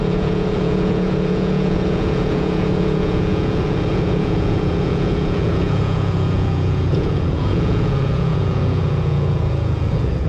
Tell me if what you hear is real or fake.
fake